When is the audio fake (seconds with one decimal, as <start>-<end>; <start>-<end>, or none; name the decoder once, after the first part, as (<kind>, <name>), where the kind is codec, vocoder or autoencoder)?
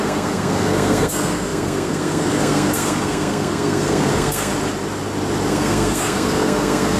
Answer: 0.0-4.5 (codec, SNAC); 5.5-7.0